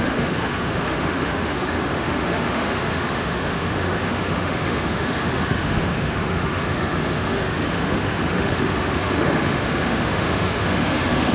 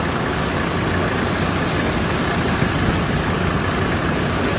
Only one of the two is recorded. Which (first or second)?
second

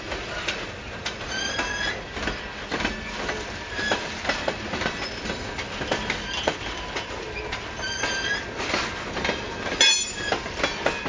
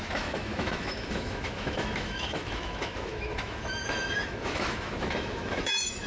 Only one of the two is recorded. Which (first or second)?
first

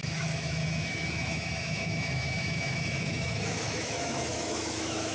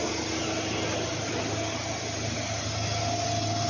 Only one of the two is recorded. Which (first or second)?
second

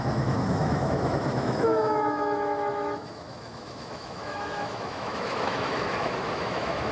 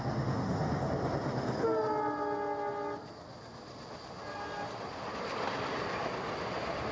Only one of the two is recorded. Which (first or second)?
second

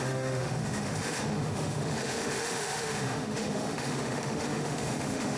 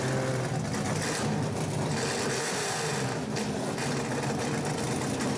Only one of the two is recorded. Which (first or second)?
second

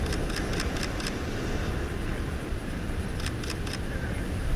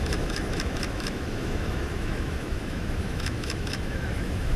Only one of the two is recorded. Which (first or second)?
first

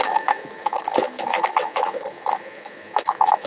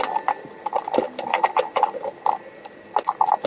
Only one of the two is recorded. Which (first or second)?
second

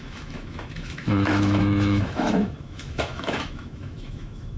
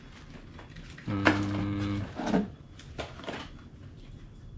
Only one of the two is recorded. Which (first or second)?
second